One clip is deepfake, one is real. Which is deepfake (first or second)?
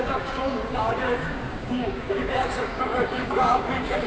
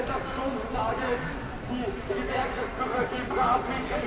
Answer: first